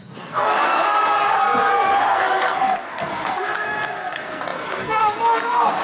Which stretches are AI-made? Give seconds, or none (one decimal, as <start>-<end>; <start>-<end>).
0.0-5.8